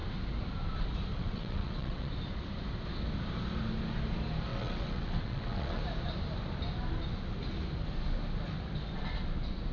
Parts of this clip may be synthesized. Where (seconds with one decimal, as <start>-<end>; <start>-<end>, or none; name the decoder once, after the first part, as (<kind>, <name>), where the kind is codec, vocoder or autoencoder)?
1.1-2.1 (vocoder, WaveNeXt); 4.5-5.8